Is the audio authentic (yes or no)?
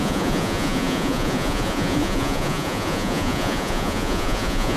no